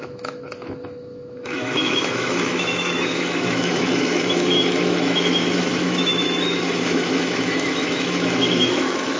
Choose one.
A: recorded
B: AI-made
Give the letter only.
B